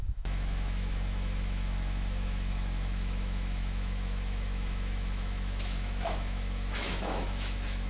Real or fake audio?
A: fake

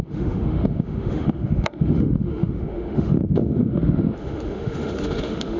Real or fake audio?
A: fake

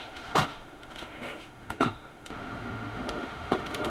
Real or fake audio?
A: fake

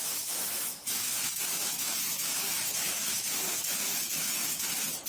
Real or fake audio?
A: fake